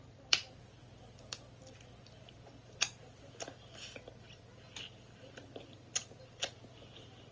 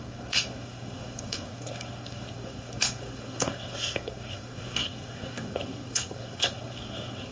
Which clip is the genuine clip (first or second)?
first